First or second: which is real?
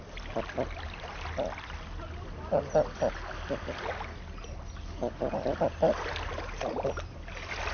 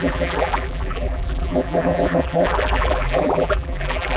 first